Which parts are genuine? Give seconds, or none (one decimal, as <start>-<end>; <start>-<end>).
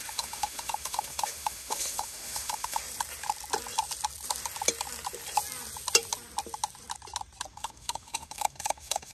2.8-7.5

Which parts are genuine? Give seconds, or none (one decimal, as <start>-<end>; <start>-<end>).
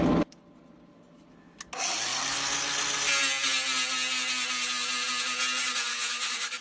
0.0-5.9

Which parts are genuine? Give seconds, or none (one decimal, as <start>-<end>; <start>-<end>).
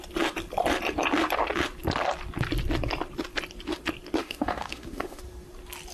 0.0-4.2; 5.2-5.9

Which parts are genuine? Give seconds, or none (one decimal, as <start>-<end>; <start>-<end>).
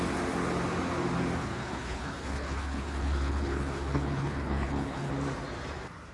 0.0-1.4; 5.1-6.1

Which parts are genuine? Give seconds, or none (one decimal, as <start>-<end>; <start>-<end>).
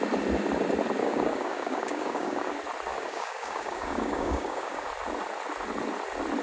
0.0-1.0; 2.5-2.9; 4.9-6.4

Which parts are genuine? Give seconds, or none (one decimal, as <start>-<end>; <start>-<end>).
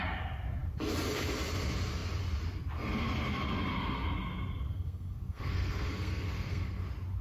0.0-4.7; 6.8-7.2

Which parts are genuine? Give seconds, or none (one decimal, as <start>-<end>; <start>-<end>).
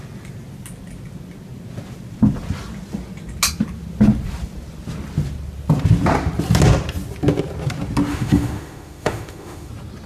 0.0-8.1; 9.7-10.1